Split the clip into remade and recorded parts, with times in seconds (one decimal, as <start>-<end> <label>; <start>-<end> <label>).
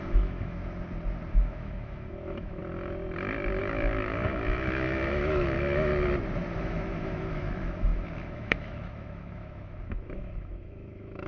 0.0-0.6 remade; 0.6-1.3 recorded; 1.3-2.6 remade; 2.6-3.6 recorded; 3.6-5.9 remade; 5.9-6.6 recorded; 6.6-11.3 remade